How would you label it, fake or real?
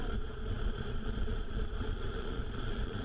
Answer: fake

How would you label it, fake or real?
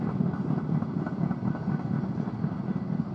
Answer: real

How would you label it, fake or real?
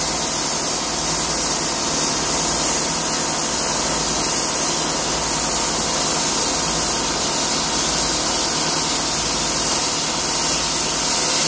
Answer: real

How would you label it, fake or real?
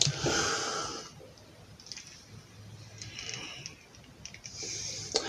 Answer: real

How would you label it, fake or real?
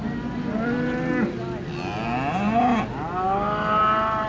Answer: real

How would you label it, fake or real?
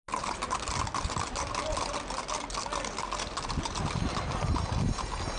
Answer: real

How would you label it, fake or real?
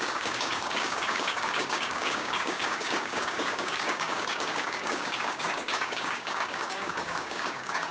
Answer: fake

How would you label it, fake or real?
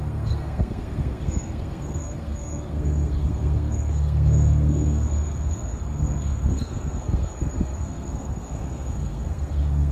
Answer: fake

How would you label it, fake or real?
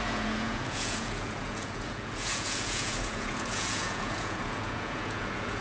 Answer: fake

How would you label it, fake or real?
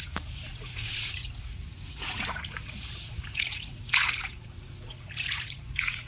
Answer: fake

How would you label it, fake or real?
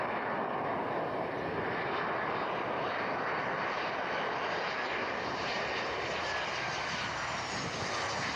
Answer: real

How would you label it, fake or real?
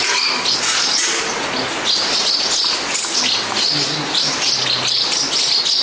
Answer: real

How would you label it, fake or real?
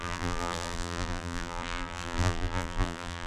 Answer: fake